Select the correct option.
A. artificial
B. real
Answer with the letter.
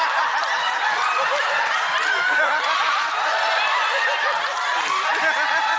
B